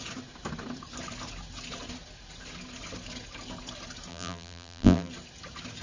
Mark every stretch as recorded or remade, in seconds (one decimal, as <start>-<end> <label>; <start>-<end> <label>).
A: 0.0-4.1 recorded; 4.1-5.1 remade; 5.1-5.8 recorded